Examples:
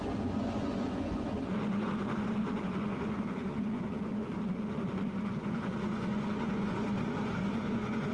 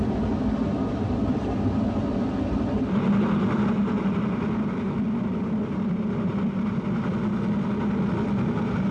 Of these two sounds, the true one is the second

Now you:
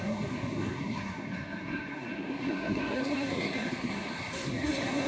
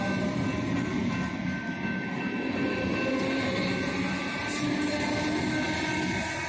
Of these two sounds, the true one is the second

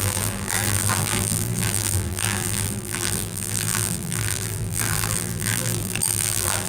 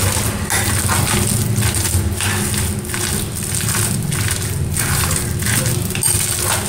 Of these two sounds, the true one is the second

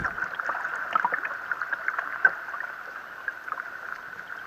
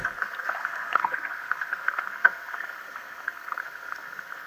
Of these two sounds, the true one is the first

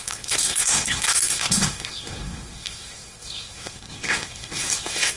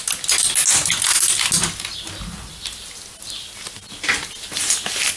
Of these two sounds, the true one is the second